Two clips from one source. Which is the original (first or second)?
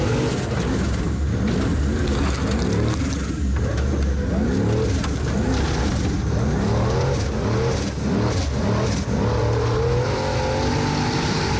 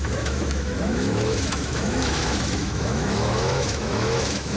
first